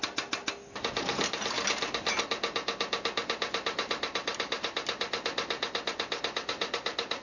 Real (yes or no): yes